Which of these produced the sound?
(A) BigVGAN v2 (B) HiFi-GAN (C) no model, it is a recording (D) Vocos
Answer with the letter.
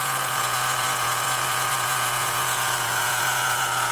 D